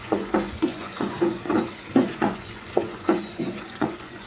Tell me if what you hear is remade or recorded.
remade